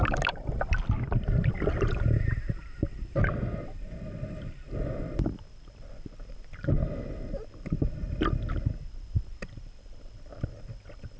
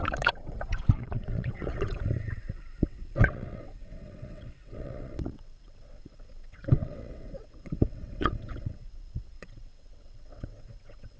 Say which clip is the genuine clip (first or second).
first